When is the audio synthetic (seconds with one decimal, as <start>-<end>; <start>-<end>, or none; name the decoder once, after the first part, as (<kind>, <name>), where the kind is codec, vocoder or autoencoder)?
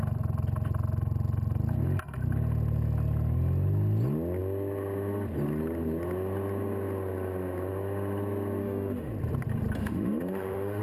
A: 8.6-9.1 (autoencoder, DAC-VAE); 9.8-10.8